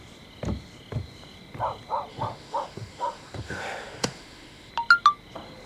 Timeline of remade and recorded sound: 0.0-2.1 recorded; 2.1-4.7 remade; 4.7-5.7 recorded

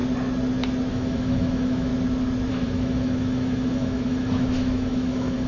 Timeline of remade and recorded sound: 0.0-0.9 recorded; 0.9-1.9 remade; 1.9-2.5 recorded; 2.5-5.5 remade

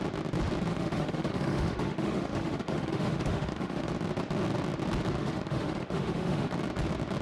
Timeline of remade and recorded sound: 0.0-0.7 recorded; 0.7-3.9 remade; 3.9-5.2 recorded; 5.2-6.5 remade; 6.5-7.2 recorded

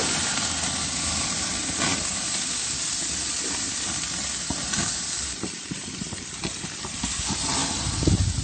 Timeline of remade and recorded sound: 0.0-8.4 recorded

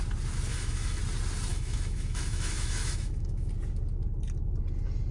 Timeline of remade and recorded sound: 0.0-0.5 recorded; 0.5-1.0 remade; 1.0-1.5 recorded; 1.5-3.5 remade; 3.5-5.1 recorded

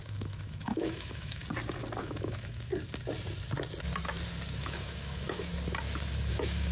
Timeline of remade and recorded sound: 0.0-1.4 remade; 1.4-2.0 recorded; 2.0-2.7 remade; 2.7-4.6 recorded; 4.6-5.5 remade; 5.5-6.3 recorded; 6.3-6.7 remade